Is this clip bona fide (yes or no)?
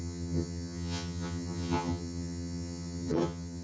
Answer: no